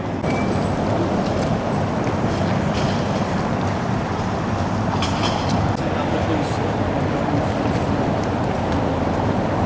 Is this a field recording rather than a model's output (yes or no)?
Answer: yes